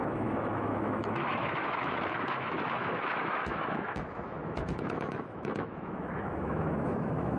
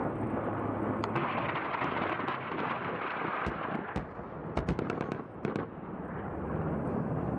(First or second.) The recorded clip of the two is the second